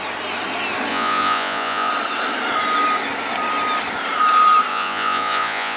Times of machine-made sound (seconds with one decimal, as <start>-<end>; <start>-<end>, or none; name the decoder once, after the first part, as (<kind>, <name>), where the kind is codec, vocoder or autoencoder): 0.9-1.9 (vocoder, Vocos); 4.7-5.8